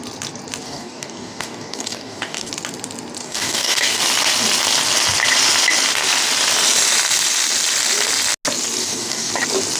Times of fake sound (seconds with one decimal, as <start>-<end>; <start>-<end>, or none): 0.6-2.5; 3.2-4.0; 8.8-9.3